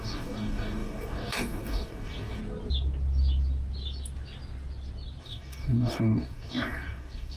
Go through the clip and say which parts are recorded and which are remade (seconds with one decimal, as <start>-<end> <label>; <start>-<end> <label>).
0.0-2.4 remade; 2.4-5.2 recorded; 5.2-7.4 remade